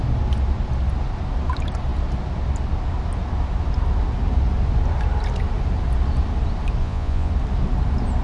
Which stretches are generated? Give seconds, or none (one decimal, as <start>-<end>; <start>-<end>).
6.8-7.3